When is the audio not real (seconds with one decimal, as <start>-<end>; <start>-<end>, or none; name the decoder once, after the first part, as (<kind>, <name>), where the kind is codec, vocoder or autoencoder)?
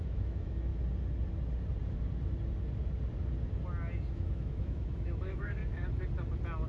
0.0-0.7 (autoencoder, DAC-VAE); 4.1-5.6